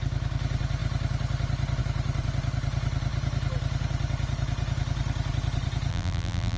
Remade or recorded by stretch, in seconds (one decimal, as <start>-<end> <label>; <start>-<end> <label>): 0.0-5.9 recorded; 5.9-6.6 remade